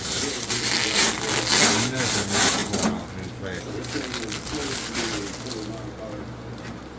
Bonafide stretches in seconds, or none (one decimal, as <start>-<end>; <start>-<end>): 0.0-7.0